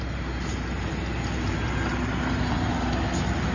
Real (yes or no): yes